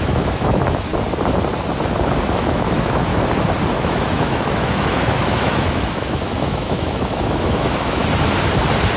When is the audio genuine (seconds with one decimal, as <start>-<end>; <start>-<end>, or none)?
0.9-2.3; 3.1-3.8; 8.0-9.0